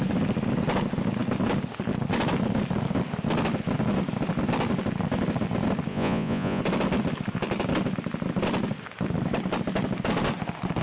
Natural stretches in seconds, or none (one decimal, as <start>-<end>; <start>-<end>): 0.0-5.9; 6.6-10.8